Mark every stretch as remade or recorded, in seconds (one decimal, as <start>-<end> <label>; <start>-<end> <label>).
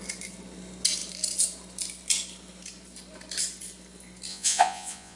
0.0-4.3 recorded; 4.3-5.2 remade